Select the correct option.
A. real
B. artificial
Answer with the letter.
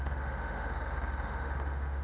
B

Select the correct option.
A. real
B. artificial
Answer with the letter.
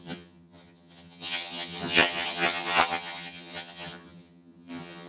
B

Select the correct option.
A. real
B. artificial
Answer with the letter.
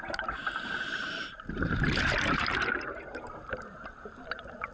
B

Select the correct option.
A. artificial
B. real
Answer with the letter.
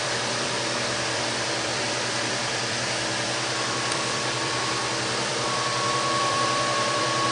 A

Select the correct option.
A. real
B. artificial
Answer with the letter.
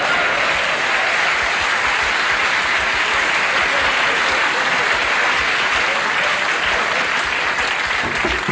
A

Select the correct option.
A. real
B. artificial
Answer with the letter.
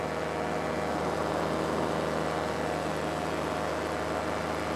A